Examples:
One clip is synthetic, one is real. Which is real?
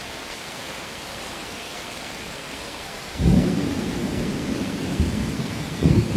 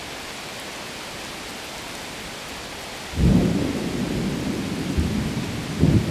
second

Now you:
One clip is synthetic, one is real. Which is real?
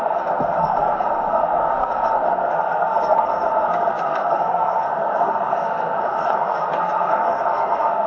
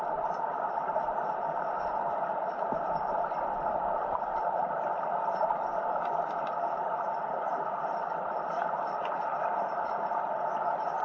second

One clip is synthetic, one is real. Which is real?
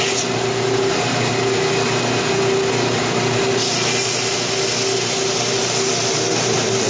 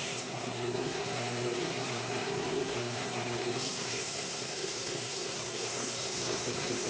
first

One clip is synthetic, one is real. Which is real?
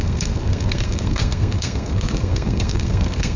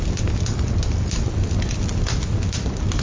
second